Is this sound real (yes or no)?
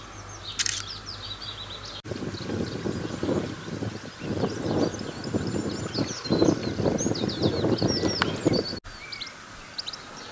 yes